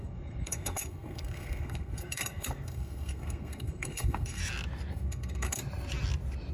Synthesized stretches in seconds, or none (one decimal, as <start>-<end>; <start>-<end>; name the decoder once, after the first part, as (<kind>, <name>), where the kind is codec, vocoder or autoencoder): 0.0-4.4 (codec, SNAC); 4.9-5.6